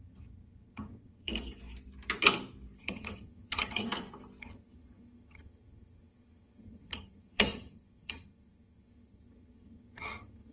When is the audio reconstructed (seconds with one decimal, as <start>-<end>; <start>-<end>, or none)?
0.0-1.3; 2.8-3.8; 4.4-10.5